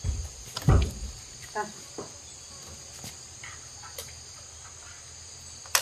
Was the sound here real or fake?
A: real